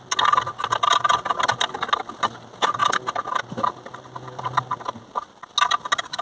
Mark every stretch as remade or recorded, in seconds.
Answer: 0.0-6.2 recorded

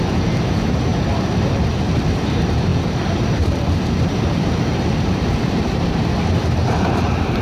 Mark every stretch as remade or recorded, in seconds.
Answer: 0.0-0.9 remade; 0.9-2.2 recorded; 2.2-7.4 remade

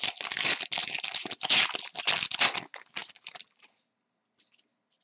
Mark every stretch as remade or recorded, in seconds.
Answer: 0.0-5.0 recorded

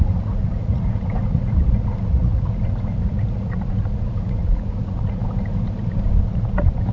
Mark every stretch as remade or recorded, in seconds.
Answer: 0.0-5.2 remade; 5.2-6.2 recorded; 6.2-6.9 remade

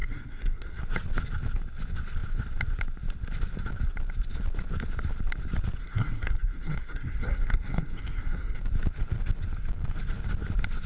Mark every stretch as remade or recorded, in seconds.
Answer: 0.0-0.8 remade; 0.8-5.8 recorded; 5.8-8.6 remade; 8.6-10.9 recorded

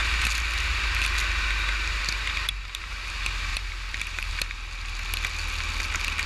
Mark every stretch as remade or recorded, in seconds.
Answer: 0.0-3.5 recorded; 3.5-4.3 remade; 4.3-6.3 recorded

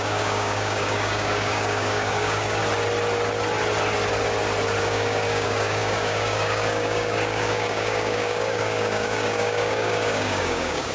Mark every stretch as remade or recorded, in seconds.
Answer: 0.0-2.6 remade; 2.6-4.8 recorded; 4.8-10.9 remade

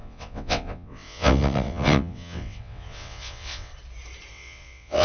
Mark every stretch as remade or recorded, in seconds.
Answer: 0.0-3.7 remade; 3.7-4.3 recorded; 4.3-5.0 remade